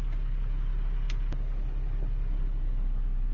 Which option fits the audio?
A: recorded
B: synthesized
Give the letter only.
A